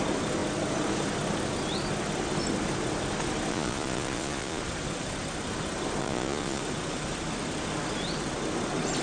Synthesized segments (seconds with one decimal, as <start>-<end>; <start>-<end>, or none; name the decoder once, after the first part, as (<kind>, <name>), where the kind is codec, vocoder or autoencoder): 3.5-4.6 (vocoder, Vocos); 6.0-6.6